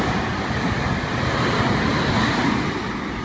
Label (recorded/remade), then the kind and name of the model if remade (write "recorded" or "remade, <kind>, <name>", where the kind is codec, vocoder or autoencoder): recorded